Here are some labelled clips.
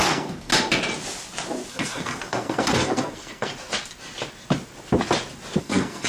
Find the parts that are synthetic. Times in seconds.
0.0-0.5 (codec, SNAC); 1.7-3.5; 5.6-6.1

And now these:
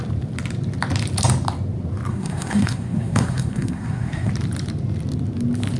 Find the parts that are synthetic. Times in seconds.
2.1-4.3 (codec, SNAC)